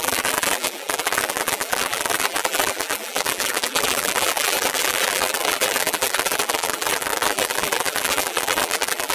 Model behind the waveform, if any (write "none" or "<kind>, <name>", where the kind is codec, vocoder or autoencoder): vocoder, BigVGAN v2